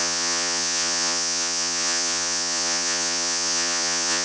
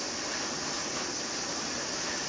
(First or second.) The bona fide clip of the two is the second